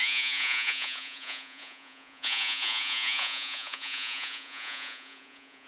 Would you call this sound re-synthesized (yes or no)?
yes